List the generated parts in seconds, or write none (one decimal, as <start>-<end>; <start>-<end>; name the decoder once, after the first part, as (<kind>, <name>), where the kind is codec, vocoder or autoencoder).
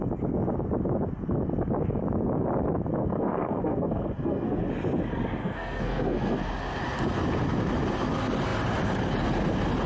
3.0-4.6 (codec, SNAC); 5.4-6.4